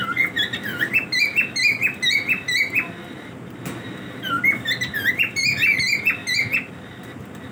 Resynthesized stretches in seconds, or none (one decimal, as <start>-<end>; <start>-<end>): none